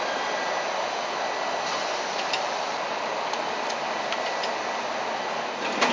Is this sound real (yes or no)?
yes